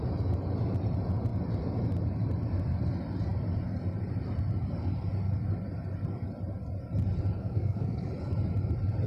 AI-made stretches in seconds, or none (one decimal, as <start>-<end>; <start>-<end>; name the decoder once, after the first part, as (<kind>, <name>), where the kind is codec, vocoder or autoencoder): 7.4-8.1 (codec, SNAC)